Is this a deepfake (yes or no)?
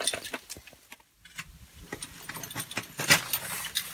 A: no